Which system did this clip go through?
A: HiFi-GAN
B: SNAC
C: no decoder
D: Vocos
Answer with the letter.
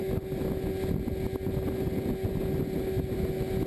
C